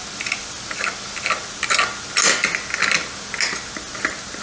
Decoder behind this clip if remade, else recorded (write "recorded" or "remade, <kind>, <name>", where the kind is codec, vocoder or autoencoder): recorded